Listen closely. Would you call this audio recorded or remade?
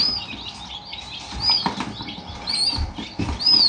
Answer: recorded